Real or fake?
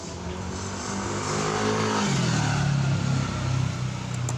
real